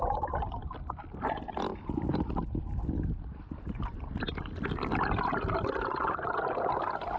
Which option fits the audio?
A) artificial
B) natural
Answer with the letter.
B